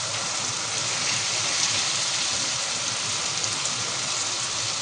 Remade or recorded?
recorded